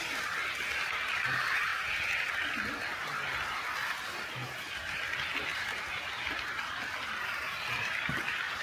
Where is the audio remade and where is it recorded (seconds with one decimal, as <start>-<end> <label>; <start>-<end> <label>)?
0.0-8.6 recorded